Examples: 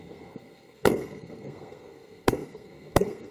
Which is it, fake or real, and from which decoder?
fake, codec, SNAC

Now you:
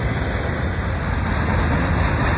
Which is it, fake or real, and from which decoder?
real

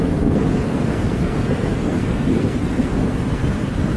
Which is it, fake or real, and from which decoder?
fake, codec, SNAC